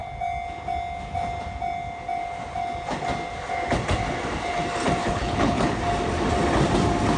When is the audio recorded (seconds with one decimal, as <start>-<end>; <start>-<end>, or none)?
0.0-5.0; 5.8-7.2